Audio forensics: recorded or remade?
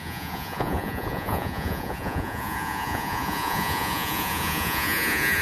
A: remade